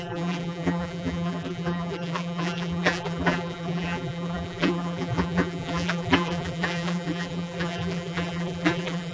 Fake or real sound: fake